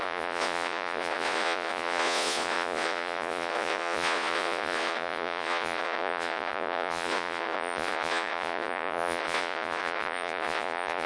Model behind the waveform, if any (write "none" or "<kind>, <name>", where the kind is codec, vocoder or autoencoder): vocoder, Vocos